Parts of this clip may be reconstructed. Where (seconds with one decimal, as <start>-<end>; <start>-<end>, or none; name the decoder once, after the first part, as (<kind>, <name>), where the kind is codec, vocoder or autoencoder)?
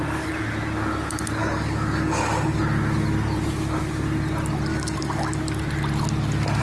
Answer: 1.4-2.6 (codec, DAC); 4.7-5.4